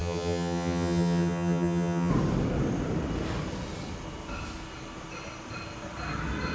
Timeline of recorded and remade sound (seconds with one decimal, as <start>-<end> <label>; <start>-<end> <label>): 0.0-2.1 remade; 2.1-6.5 recorded